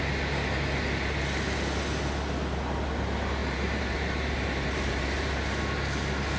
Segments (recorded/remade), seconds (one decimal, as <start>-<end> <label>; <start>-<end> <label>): 0.0-3.4 recorded; 3.4-5.6 remade; 5.6-6.4 recorded